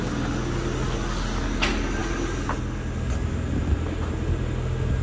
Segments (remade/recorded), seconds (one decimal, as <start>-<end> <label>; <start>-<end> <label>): 0.0-5.0 recorded